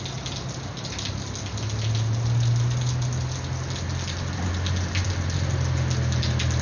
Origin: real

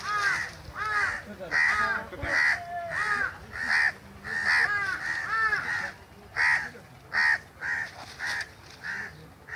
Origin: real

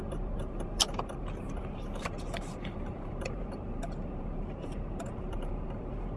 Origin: fake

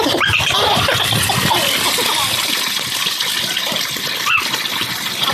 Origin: real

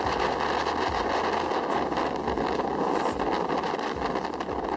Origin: real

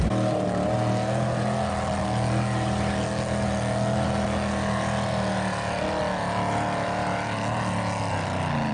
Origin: real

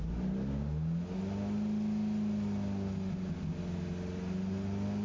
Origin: real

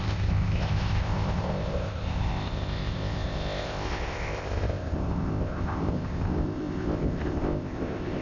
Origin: fake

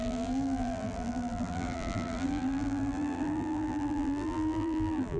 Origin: fake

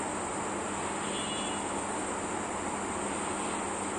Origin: real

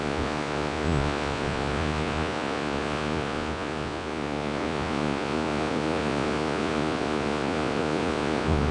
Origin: fake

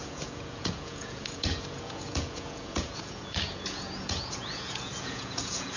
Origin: fake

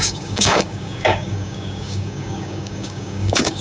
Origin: fake